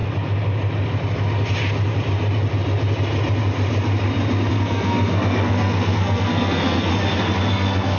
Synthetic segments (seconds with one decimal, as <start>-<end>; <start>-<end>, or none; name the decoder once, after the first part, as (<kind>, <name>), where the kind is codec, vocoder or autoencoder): 4.5-6.9 (codec, SNAC); 7.5-8.0